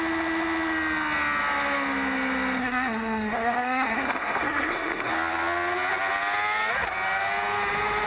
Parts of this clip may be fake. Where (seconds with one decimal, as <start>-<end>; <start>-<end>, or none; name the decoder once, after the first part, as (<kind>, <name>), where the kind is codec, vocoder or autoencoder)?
2.6-5.1 (codec, SNAC)